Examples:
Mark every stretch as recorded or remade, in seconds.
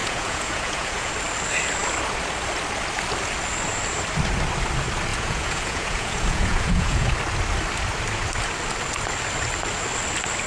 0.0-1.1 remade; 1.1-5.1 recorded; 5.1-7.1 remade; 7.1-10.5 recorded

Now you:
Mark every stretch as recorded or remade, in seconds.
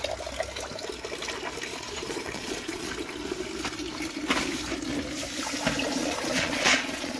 0.0-1.7 recorded; 1.7-2.9 remade; 2.9-6.0 recorded; 6.0-7.2 remade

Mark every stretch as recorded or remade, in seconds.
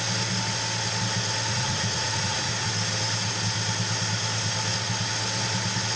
0.0-1.5 recorded; 1.5-2.5 remade; 2.5-6.0 recorded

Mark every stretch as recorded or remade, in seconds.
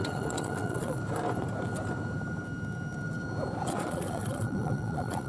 0.0-1.0 remade; 1.0-3.7 recorded; 3.7-5.3 remade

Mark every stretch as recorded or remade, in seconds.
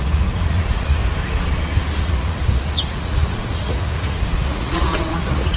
0.0-1.0 remade; 1.0-2.0 recorded; 2.0-5.6 remade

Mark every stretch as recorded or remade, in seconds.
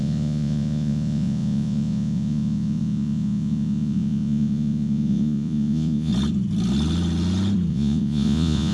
0.0-6.1 remade; 6.1-7.7 recorded; 7.7-8.7 remade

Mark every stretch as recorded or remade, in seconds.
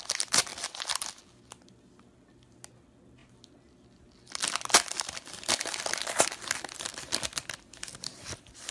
0.0-8.7 recorded